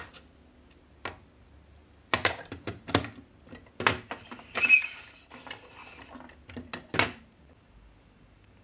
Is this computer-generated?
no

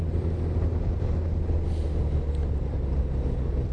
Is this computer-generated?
no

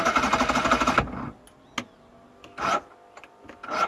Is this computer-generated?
no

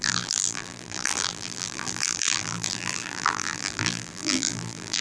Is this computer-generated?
yes